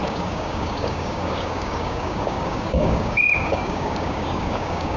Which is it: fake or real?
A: fake